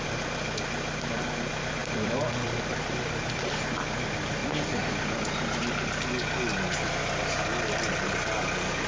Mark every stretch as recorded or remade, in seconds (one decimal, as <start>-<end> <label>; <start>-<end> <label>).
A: 0.0-1.8 recorded; 1.8-3.4 remade; 3.4-8.9 recorded